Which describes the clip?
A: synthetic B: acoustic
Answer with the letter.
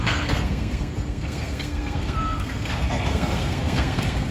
A